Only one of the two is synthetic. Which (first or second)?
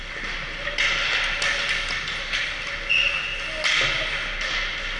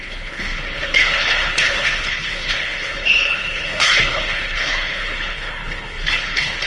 second